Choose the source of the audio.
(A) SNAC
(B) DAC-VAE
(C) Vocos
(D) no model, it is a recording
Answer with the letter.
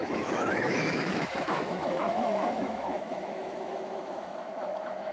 B